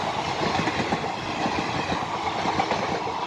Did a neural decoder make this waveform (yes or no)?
no